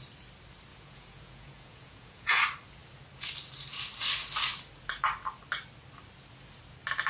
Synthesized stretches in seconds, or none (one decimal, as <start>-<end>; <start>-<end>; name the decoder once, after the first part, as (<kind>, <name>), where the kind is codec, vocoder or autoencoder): 0.7-2.4 (vocoder, Vocos)